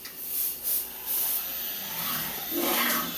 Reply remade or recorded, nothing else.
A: recorded